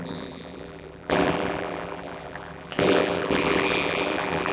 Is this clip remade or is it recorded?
remade